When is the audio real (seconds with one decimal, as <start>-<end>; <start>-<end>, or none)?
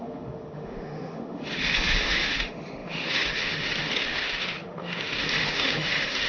none